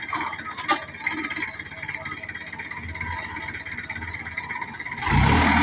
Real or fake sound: real